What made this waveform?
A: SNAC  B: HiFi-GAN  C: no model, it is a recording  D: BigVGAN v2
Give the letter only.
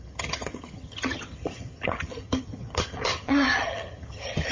B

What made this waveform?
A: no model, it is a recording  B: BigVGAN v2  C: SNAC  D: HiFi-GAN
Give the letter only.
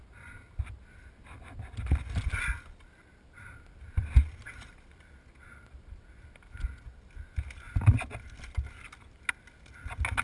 A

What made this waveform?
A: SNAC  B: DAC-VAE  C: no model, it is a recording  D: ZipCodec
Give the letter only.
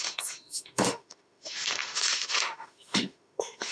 B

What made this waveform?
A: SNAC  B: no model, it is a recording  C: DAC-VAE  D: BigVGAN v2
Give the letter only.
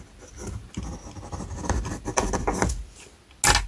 B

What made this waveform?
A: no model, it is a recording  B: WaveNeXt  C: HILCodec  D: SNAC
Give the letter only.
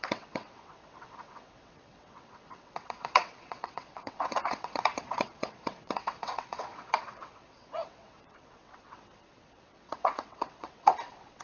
B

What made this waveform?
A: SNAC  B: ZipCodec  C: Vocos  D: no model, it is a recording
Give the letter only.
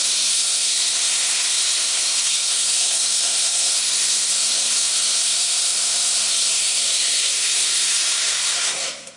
A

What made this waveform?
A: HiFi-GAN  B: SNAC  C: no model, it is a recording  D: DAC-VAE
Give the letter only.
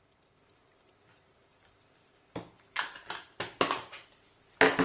C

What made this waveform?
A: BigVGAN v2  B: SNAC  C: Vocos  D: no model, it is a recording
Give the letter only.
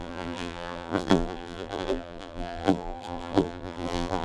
A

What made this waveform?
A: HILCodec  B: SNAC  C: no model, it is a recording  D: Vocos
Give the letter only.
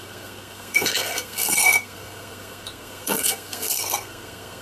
B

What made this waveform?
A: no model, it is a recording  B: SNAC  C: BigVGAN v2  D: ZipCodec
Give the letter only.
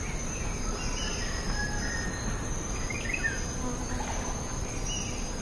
A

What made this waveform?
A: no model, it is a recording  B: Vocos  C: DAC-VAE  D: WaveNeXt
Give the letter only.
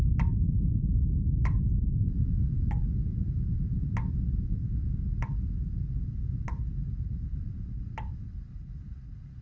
A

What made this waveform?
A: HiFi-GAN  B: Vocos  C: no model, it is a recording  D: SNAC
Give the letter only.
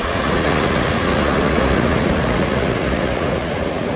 B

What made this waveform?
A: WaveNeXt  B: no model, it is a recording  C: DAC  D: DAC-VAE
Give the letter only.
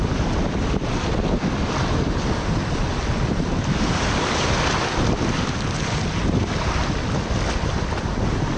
B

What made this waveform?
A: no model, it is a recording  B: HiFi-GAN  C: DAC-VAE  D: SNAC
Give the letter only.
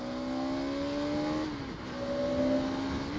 A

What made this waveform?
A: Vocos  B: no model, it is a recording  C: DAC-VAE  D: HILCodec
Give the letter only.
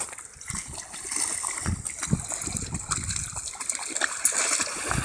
B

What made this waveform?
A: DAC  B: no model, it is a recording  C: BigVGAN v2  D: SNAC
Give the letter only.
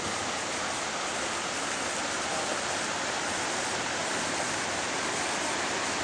B